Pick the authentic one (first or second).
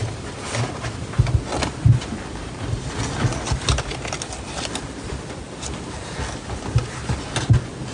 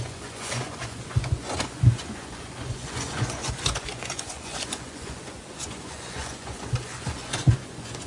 first